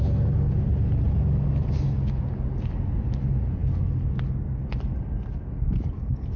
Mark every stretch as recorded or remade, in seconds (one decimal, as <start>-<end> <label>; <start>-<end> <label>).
0.0-6.4 recorded